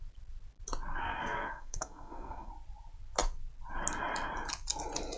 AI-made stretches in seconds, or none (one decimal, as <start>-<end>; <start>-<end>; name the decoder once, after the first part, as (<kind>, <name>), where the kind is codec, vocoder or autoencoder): 1.0-2.5 (codec, SNAC)